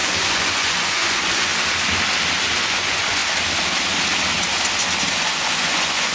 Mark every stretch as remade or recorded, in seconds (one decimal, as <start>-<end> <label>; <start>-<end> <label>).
0.0-1.5 remade; 1.5-2.6 recorded; 2.6-3.2 remade; 3.2-5.1 recorded; 5.1-6.1 remade